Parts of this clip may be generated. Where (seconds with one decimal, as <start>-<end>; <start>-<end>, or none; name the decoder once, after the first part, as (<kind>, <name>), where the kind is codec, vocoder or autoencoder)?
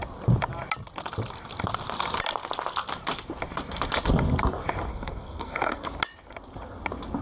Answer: 4.9-5.9 (codec, SNAC)